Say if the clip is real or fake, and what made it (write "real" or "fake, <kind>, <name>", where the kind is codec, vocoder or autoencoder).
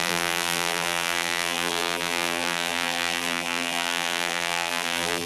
fake, vocoder, BigVGAN v2